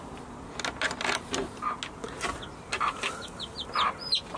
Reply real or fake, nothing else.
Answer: real